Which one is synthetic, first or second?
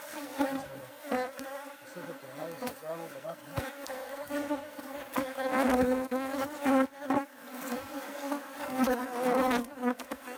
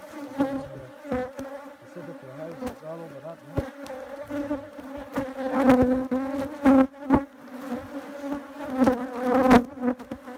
first